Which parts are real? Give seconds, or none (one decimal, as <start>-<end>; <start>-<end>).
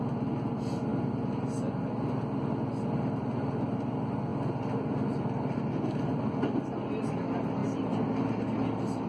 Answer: 0.0-9.1